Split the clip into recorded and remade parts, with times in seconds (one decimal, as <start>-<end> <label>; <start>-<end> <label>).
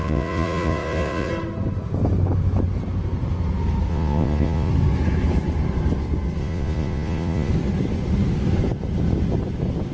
0.0-1.3 remade; 1.3-3.9 recorded; 3.9-4.7 remade; 4.7-6.4 recorded; 6.4-7.5 remade; 7.5-9.9 recorded